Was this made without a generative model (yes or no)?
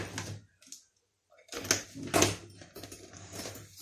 yes